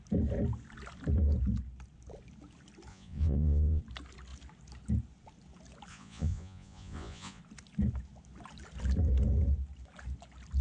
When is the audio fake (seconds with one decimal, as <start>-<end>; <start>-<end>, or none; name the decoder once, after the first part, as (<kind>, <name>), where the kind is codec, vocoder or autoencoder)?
2.9-3.8 (vocoder, Vocos); 5.9-7.4